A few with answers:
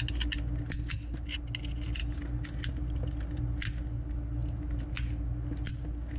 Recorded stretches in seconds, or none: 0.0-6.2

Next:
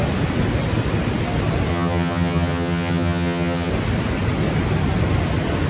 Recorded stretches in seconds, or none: 0.0-1.7; 3.7-5.7

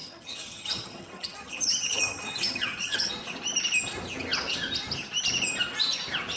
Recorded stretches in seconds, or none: 3.1-6.4